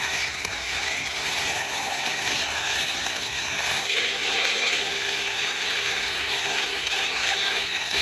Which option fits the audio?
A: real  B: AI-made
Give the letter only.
B